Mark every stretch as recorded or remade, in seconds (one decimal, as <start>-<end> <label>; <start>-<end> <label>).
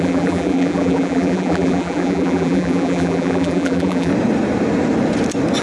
0.0-4.1 remade; 4.1-5.6 recorded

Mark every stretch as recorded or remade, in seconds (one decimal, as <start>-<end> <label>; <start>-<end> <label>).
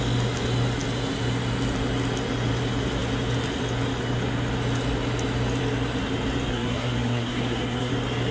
0.0-6.5 recorded; 6.5-7.9 remade; 7.9-8.3 recorded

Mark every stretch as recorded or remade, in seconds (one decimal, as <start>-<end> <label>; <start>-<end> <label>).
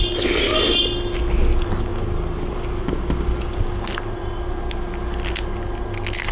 0.0-6.3 recorded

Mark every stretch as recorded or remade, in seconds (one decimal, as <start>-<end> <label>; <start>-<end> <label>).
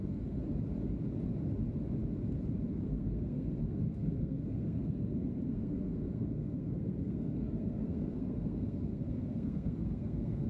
0.0-0.4 remade; 0.4-2.7 recorded; 2.7-10.5 remade